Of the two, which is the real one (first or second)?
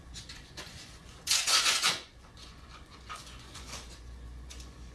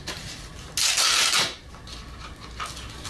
second